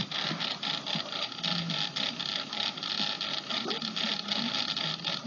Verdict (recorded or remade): recorded